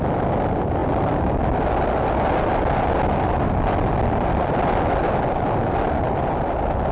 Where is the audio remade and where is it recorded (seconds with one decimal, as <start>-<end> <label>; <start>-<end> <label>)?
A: 0.0-6.9 recorded

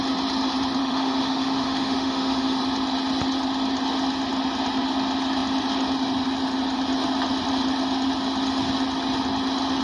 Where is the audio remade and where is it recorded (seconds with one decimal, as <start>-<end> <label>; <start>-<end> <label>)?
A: 0.0-0.8 recorded; 0.8-2.6 remade; 2.6-9.8 recorded

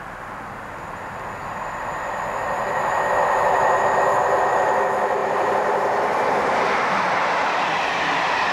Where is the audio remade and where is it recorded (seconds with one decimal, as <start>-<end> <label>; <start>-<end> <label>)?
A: 0.0-8.5 recorded